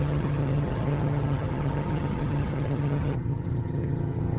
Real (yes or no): no